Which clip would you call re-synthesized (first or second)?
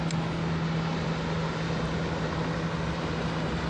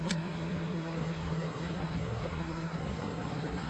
second